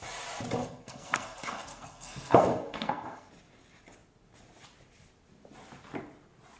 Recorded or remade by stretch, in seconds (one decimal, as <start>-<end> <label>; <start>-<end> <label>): 0.0-0.6 recorded; 0.6-3.3 remade; 3.3-6.6 recorded